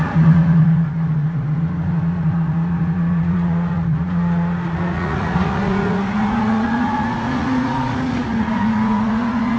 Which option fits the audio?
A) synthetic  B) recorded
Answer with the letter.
A